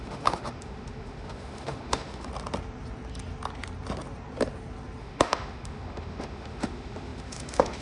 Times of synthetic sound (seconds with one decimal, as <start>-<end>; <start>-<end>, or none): 0.0-2.3; 5.0-7.8